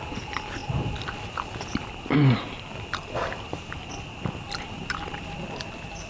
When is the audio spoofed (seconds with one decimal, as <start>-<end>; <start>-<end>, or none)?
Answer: none